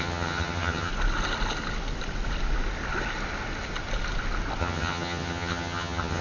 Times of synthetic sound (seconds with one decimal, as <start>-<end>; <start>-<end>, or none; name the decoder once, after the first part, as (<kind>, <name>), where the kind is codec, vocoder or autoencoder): 0.0-0.9 (vocoder, HiFi-GAN); 4.6-6.2